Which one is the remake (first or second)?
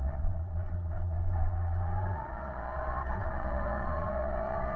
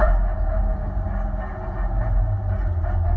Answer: first